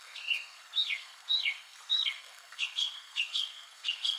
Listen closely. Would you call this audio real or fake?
fake